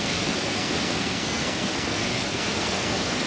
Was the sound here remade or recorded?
remade